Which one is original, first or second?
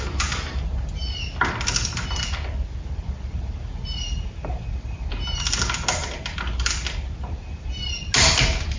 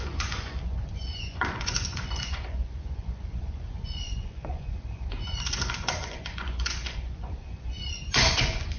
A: first